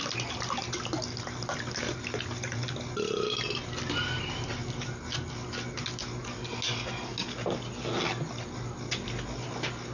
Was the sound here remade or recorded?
recorded